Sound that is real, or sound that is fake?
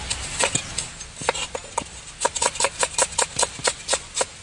real